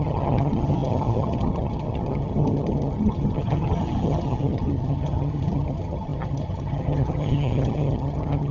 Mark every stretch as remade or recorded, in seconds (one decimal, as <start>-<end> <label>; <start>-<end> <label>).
0.0-8.5 remade